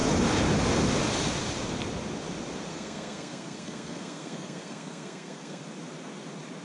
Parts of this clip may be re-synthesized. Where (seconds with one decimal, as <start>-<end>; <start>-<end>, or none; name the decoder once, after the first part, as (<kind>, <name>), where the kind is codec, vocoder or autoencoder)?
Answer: 2.7-5.6 (codec, SNAC)

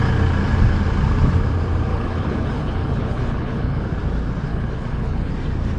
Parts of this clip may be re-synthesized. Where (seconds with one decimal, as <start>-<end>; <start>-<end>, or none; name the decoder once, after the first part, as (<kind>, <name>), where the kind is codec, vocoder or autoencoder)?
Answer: 1.9-3.8 (codec, HILCodec); 4.5-5.3

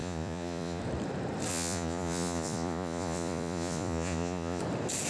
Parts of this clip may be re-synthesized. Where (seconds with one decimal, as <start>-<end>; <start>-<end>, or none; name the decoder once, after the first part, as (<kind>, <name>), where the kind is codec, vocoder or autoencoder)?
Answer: 0.0-0.8 (vocoder, Vocos); 1.5-4.6